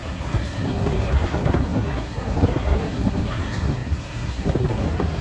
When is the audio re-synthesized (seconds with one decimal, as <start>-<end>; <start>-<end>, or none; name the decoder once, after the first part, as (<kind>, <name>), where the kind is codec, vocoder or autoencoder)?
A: 0.0-5.2 (codec, SNAC)